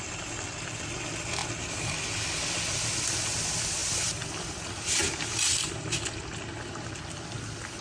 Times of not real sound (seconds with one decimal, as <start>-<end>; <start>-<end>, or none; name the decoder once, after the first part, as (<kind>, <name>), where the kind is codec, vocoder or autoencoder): 3.8-7.0 (vocoder, BigVGAN v2)